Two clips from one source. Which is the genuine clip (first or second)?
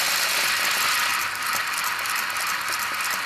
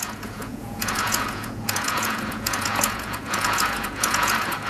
first